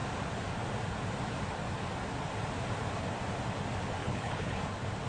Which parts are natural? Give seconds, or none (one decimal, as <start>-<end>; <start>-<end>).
0.0-4.0; 4.6-5.1

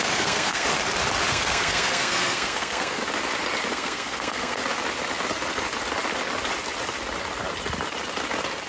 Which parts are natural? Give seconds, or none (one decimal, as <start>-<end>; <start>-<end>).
0.7-1.3; 3.0-3.7; 4.6-8.7

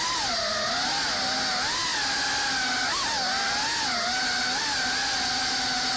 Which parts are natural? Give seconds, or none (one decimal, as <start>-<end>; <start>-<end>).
0.0-6.0